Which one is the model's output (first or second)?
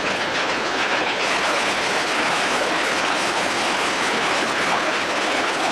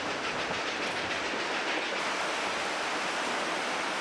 first